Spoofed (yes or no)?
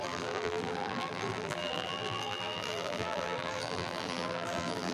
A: yes